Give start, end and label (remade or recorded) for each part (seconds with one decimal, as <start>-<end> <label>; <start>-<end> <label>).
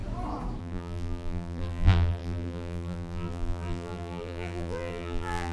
0.0-0.6 recorded; 0.6-5.5 remade